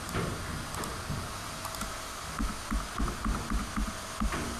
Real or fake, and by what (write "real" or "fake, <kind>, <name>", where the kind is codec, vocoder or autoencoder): real